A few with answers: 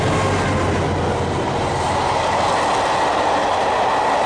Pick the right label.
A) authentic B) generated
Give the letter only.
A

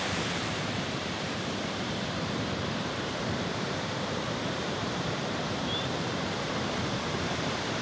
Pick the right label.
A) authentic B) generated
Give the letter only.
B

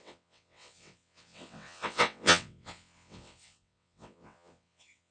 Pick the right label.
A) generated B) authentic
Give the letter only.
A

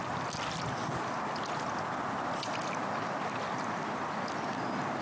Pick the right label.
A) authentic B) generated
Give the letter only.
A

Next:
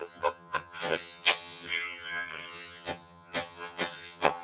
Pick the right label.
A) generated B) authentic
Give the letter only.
A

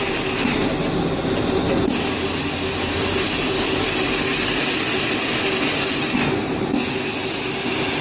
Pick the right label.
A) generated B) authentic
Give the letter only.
B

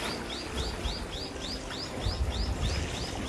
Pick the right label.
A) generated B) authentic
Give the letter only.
B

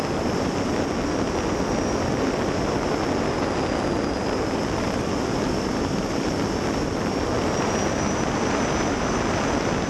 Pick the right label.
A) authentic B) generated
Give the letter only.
A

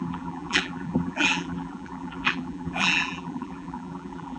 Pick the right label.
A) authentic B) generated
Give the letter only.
B